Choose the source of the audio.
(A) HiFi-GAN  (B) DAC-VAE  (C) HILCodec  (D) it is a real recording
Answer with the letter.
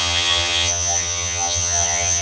A